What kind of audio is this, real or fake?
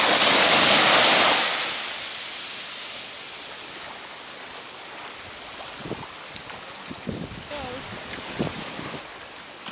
real